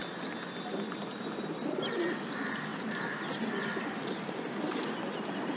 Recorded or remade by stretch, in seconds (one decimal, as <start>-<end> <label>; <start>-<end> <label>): 0.0-5.6 recorded